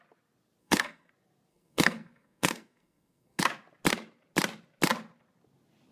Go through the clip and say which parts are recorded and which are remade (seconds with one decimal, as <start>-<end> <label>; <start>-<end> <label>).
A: 0.0-0.6 recorded; 0.6-1.1 remade; 1.1-1.5 recorded; 1.5-3.4 remade; 3.4-5.9 recorded